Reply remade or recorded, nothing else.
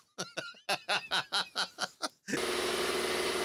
recorded